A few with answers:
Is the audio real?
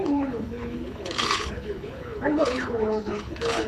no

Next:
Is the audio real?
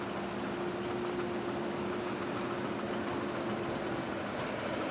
yes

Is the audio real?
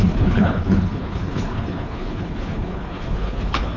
no